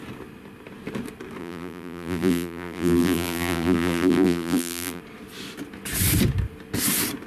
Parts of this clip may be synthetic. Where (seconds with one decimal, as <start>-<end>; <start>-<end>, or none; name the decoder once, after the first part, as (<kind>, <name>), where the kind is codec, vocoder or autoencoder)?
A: 1.4-5.0 (vocoder, BigVGAN v2)